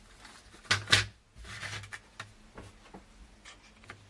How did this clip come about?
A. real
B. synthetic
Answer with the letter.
A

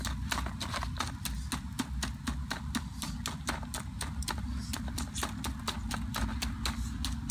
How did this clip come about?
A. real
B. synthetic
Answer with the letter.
A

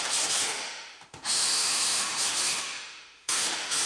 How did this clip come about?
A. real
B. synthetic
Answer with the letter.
B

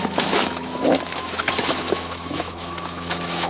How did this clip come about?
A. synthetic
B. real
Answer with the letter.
A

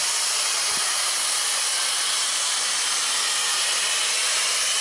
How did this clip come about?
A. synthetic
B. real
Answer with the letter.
B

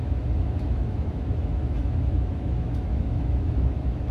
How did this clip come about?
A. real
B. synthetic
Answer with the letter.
B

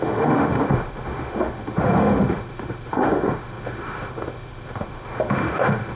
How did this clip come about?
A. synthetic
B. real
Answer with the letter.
A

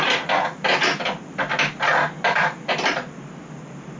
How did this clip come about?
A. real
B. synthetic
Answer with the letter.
A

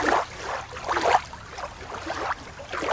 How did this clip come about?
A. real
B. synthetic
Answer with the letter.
A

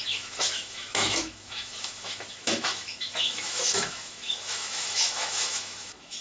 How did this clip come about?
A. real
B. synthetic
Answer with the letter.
B